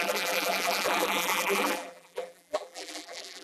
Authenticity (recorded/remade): remade